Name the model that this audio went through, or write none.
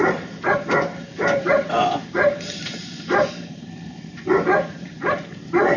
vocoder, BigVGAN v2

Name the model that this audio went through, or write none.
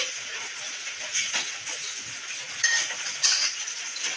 vocoder, Vocos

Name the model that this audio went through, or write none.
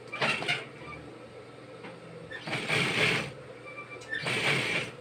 none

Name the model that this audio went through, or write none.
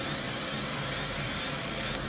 none